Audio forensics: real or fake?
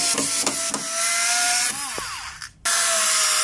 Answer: real